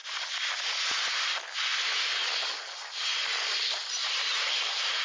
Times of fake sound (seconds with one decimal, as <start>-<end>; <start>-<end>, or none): 1.7-2.2; 4.0-5.0